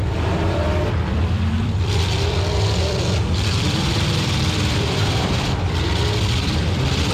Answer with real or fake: fake